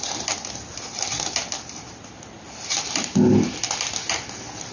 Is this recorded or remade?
recorded